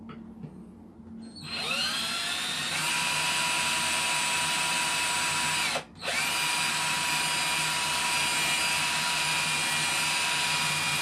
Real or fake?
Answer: real